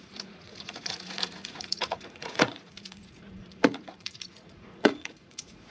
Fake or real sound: fake